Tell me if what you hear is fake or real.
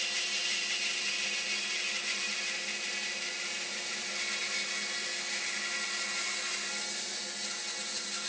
real